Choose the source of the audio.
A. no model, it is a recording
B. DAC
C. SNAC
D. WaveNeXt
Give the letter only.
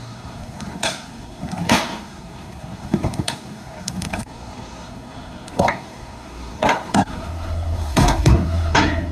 C